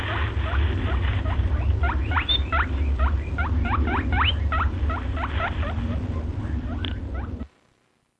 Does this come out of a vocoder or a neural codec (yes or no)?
no